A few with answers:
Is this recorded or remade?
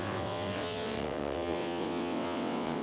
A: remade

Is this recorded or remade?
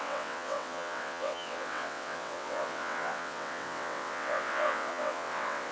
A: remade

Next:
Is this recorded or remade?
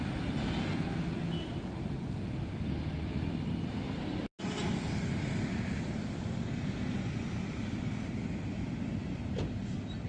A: recorded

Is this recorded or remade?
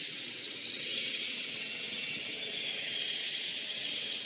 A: remade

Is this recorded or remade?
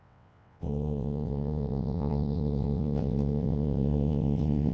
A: remade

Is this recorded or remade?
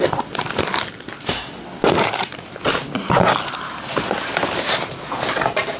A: recorded